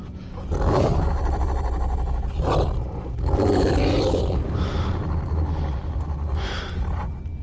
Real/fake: real